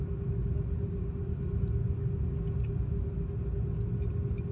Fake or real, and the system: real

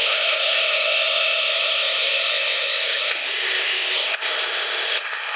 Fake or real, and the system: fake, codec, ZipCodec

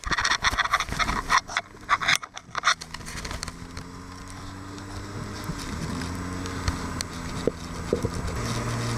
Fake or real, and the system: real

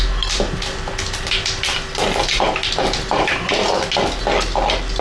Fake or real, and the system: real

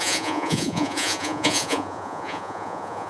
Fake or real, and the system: fake, vocoder, Vocos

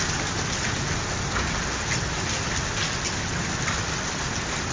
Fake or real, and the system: real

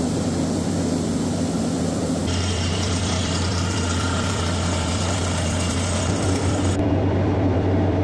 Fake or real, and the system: fake, vocoder, BigVGAN v2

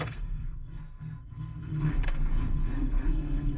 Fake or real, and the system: fake, codec, SNAC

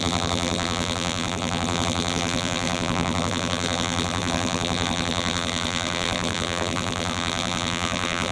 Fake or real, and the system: fake, vocoder, BigVGAN v2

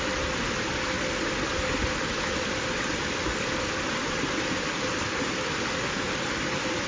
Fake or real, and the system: real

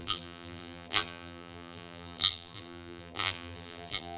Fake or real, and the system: fake, vocoder, BigVGAN v2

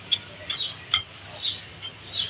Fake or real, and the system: real